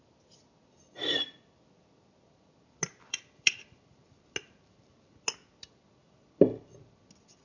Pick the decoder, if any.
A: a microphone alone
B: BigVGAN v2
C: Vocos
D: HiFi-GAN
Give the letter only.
A